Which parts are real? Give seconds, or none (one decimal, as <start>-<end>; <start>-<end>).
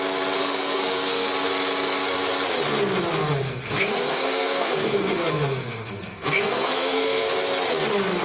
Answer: 0.0-0.4; 1.3-3.2; 7.3-8.2